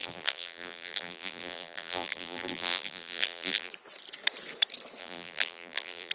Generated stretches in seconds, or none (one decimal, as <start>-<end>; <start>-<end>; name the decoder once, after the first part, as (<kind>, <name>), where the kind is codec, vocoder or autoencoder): 0.0-3.7 (vocoder, BigVGAN v2); 5.0-6.1